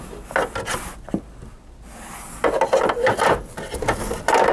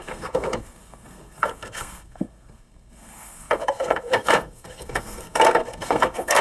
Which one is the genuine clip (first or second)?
first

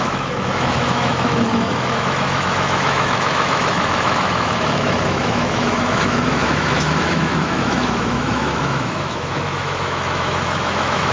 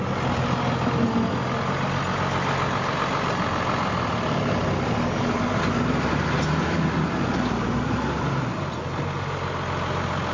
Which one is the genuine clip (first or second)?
second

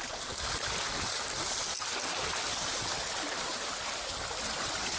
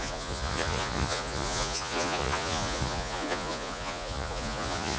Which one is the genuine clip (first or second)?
first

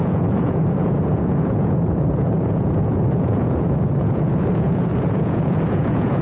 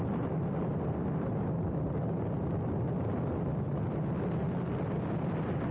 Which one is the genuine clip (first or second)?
second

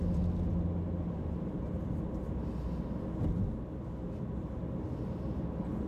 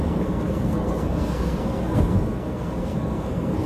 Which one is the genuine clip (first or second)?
first